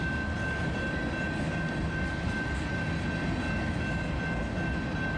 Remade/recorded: recorded